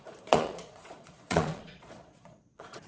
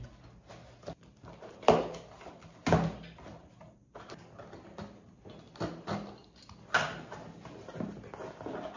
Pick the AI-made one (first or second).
first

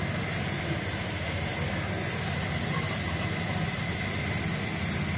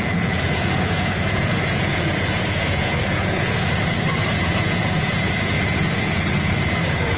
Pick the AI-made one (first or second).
second